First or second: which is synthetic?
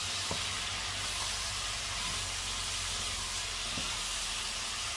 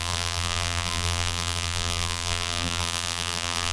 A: second